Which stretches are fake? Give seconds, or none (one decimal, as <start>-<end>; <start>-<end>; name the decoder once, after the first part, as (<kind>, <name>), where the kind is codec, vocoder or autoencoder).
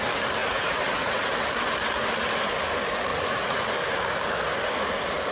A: 0.4-1.2 (vocoder, Vocos); 3.1-3.7